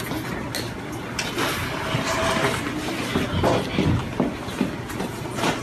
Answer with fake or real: real